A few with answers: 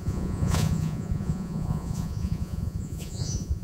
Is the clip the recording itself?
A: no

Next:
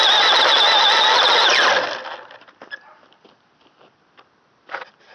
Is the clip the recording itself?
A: yes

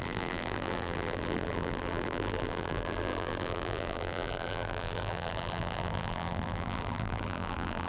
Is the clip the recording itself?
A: no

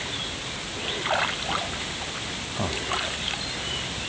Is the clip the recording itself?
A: yes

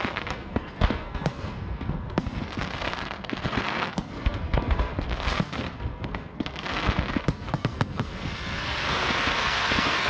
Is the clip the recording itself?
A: no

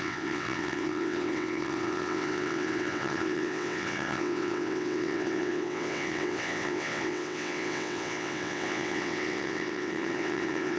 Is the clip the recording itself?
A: no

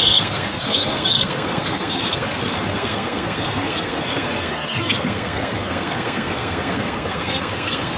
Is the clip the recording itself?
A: no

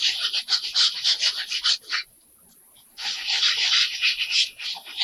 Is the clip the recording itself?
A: no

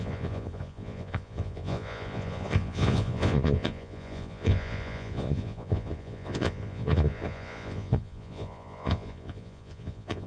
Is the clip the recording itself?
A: no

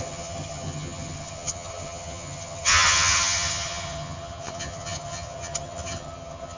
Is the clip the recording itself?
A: no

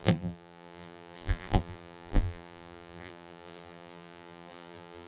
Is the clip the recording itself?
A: no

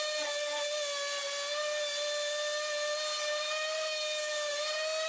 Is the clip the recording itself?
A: yes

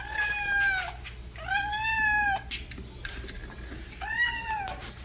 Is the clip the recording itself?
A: yes